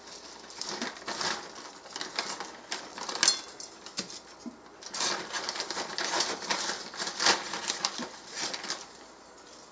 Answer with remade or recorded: recorded